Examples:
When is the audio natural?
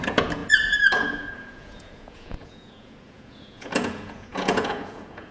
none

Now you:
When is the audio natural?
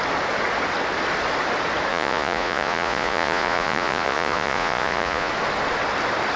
0.0-1.9; 5.3-6.4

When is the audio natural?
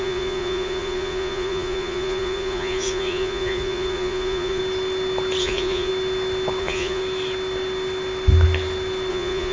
4.6-5.4; 5.9-6.6; 7.0-9.1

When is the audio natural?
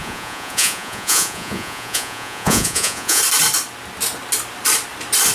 3.2-5.3